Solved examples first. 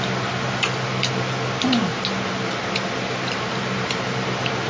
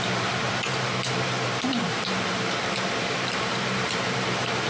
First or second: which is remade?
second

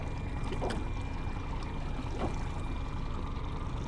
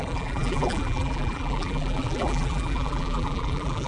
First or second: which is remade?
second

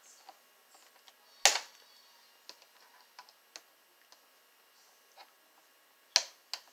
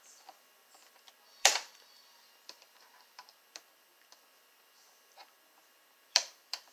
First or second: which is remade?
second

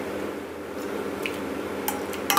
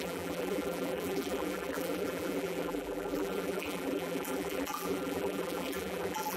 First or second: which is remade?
second